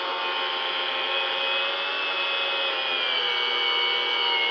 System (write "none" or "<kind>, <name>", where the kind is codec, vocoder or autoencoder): none